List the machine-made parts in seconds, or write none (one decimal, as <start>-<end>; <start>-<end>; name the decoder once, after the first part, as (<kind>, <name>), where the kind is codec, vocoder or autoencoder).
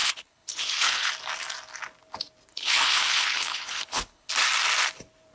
0.0-1.1 (codec, HILCodec); 2.5-4.3